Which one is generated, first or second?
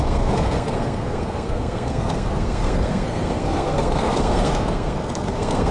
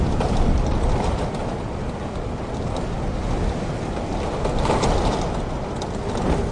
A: first